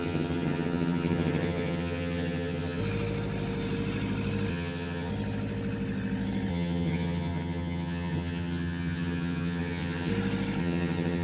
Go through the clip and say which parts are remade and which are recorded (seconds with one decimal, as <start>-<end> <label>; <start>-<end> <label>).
0.0-2.8 remade; 2.8-4.5 recorded; 4.5-5.1 remade; 5.1-6.5 recorded; 6.5-10.1 remade; 10.1-10.6 recorded; 10.6-11.2 remade